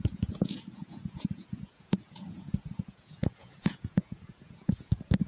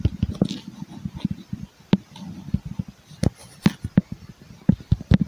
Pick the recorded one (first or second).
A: second